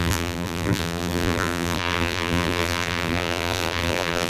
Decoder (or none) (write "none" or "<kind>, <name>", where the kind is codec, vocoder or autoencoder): vocoder, BigVGAN v2